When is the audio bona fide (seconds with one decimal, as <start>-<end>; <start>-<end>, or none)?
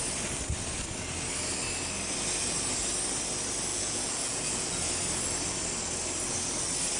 0.0-3.7; 4.9-7.0